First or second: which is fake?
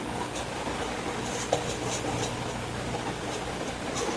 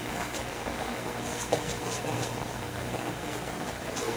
second